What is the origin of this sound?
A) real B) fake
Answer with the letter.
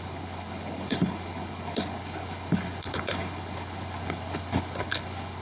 B